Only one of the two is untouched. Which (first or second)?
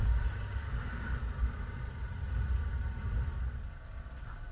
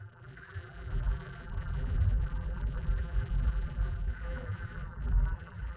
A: first